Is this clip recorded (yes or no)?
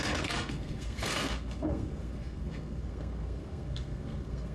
no